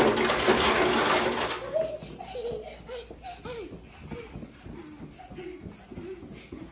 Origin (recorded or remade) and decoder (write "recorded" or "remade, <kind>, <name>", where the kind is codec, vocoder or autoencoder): recorded